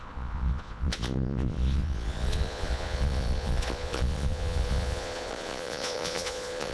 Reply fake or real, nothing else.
fake